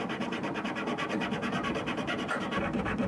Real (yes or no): no